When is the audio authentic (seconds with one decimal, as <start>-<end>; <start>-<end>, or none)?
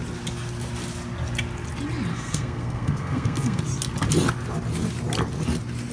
0.0-2.1; 3.6-5.9